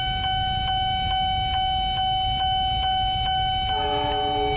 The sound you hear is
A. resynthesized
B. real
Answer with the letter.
B